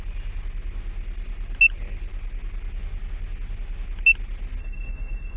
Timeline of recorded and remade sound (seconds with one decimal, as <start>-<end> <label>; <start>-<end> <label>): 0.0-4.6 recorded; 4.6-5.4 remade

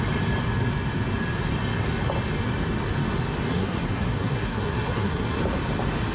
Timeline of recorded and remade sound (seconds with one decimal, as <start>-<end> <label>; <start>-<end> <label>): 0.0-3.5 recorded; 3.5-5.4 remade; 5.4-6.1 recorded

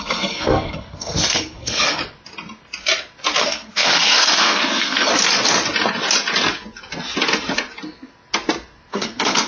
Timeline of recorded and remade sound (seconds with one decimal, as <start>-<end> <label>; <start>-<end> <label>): 0.0-2.0 remade; 2.0-3.4 recorded; 3.4-5.1 remade; 5.1-8.9 recorded; 8.9-9.5 remade

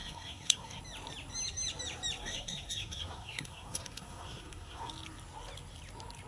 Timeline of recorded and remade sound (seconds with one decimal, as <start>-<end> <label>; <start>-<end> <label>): 0.0-0.8 remade; 0.8-2.2 recorded; 2.2-4.9 remade; 4.9-6.3 recorded

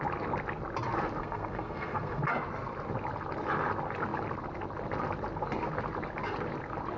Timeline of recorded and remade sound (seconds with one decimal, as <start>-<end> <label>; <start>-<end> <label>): 0.0-1.2 recorded; 1.2-2.2 remade; 2.2-7.0 recorded

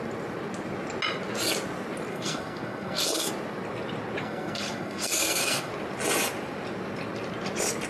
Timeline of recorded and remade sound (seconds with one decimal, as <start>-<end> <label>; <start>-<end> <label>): 0.0-2.1 recorded; 2.1-3.3 remade; 3.3-4.2 recorded; 4.2-5.7 remade; 5.7-7.9 recorded

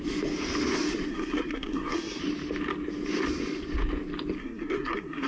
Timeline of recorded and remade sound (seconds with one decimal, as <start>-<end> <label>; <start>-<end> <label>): 0.0-1.1 recorded; 1.1-2.2 remade; 2.2-4.4 recorded; 4.4-5.3 remade

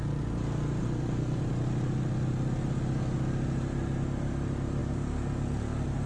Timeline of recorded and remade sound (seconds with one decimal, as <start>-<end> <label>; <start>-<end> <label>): 0.0-0.8 recorded; 0.8-1.4 remade; 1.4-6.1 recorded